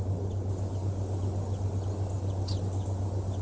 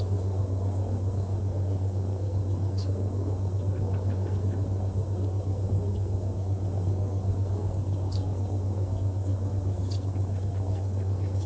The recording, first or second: first